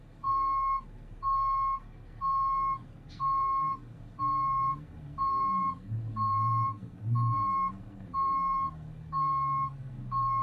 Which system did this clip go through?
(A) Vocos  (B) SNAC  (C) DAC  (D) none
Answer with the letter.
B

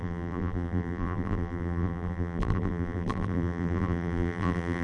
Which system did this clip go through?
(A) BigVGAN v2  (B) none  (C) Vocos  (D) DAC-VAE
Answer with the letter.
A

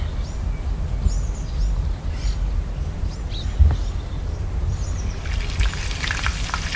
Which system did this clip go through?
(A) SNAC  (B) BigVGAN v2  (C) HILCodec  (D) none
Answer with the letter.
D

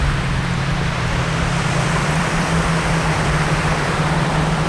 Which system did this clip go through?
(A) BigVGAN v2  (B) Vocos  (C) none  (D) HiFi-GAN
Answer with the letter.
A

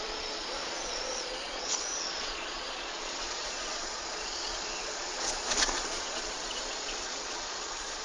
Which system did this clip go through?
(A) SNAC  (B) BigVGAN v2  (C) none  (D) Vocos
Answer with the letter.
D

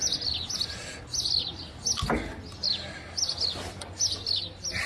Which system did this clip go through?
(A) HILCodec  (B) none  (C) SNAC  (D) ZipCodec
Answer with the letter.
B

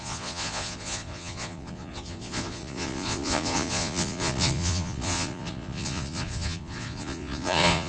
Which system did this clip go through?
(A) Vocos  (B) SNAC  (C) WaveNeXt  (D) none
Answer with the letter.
A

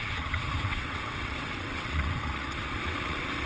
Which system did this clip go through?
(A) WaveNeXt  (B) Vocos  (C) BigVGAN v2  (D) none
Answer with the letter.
A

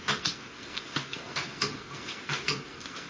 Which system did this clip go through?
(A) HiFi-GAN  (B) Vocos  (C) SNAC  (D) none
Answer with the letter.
C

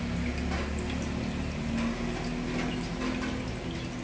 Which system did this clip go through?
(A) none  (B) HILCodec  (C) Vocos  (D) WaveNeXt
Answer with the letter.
A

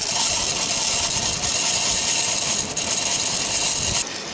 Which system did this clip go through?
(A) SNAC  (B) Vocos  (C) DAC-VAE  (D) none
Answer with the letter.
D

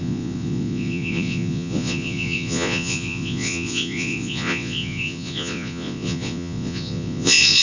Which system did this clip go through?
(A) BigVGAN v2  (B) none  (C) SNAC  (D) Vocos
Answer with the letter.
D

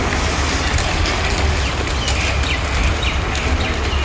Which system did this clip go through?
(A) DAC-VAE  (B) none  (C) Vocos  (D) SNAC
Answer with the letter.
B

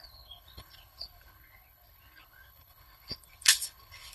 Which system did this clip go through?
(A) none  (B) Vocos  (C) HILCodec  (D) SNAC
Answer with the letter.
C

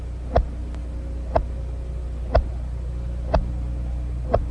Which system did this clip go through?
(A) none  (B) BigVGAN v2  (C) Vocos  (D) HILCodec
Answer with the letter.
A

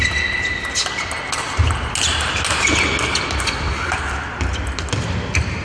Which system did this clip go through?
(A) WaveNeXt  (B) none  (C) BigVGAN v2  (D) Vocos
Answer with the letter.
B